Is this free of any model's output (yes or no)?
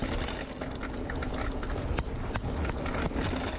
yes